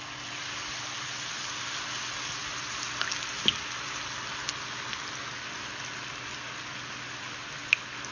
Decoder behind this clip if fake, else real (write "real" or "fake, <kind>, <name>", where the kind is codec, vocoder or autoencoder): real